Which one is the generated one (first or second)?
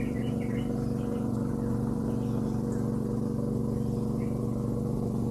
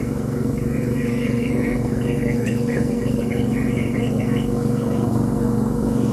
second